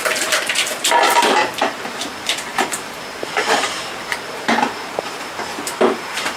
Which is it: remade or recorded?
remade